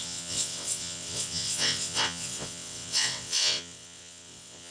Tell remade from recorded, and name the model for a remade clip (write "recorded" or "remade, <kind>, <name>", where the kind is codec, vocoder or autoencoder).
remade, vocoder, WaveNeXt